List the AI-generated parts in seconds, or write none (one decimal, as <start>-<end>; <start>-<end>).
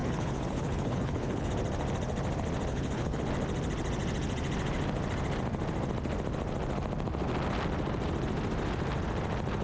0.0-1.5; 2.7-3.2